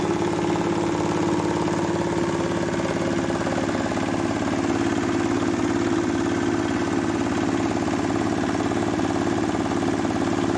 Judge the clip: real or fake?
real